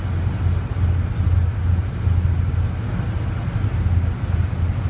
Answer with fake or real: real